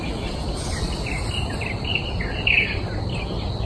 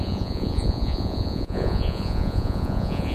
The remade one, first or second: second